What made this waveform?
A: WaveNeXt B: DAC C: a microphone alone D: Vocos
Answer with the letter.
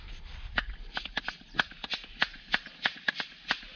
C